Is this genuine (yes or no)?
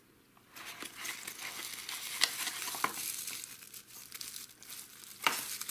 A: yes